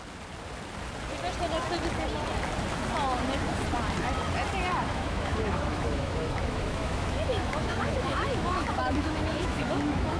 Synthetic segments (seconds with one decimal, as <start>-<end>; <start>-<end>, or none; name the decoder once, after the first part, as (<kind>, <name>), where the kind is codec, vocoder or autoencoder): 4.9-10.2 (autoencoder, DAC-VAE)